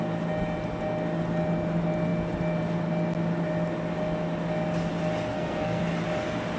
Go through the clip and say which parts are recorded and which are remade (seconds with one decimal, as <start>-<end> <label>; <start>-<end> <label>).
0.0-5.3 recorded; 5.3-5.8 remade; 5.8-6.6 recorded